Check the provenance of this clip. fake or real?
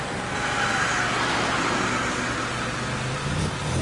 real